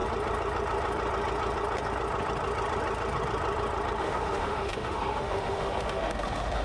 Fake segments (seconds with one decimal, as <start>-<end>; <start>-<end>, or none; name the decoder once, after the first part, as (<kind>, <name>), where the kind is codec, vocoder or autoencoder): 4.0-6.6 (autoencoder, DAC-VAE)